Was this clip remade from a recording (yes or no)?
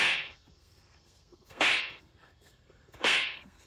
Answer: yes